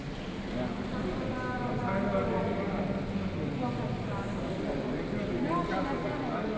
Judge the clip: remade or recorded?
recorded